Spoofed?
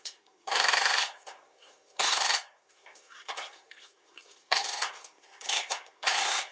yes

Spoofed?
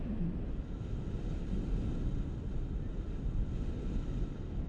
no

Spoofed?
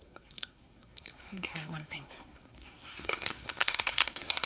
yes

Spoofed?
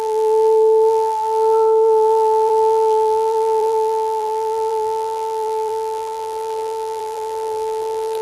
yes